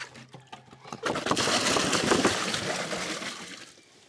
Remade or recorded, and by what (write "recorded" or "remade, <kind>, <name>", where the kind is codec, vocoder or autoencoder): recorded